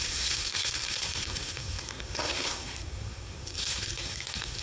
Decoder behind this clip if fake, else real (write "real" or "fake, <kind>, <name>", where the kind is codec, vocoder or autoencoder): fake, codec, SNAC